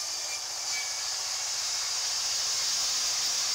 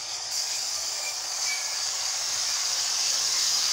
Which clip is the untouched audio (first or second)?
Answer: first